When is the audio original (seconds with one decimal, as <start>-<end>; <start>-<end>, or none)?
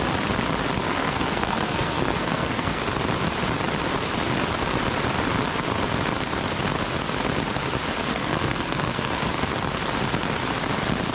0.0-0.8; 2.8-8.1; 9.3-11.1